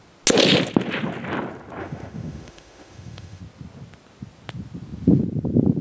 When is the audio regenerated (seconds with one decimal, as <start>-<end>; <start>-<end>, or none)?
1.8-3.4